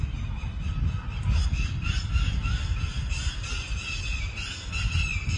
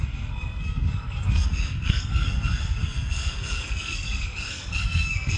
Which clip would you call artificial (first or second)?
second